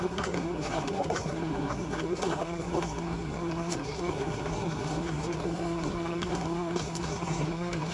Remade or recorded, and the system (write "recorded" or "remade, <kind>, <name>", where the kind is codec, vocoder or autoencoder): remade, codec, SNAC